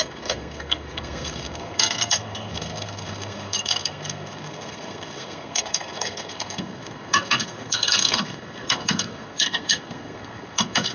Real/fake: fake